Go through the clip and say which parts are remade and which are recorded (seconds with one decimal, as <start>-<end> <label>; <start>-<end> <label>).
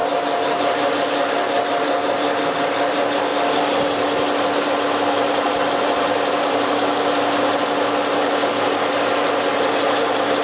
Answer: 0.0-10.4 recorded